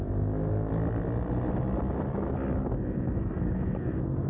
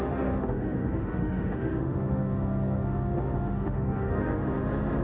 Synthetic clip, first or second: second